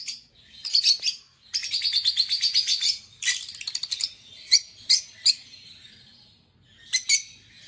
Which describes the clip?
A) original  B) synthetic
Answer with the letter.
A